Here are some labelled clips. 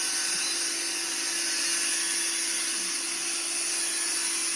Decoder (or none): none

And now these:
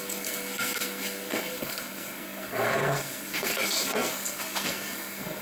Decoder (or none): codec, SNAC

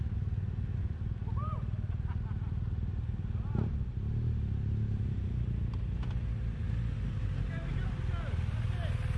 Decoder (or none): none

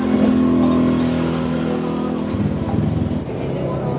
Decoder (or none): none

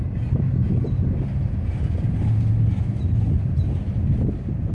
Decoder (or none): none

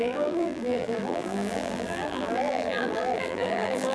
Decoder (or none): vocoder, BigVGAN v2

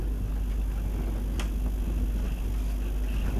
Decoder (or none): none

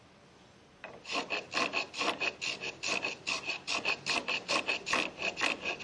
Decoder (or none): none